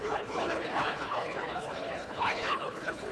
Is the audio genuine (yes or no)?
no